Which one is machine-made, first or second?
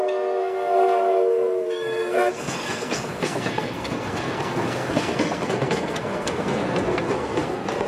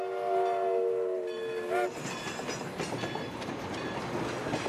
first